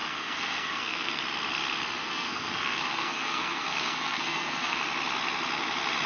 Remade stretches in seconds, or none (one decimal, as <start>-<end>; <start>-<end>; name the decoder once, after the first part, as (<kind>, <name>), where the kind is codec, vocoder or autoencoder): 0.0-1.2 (codec, SNAC); 2.0-4.8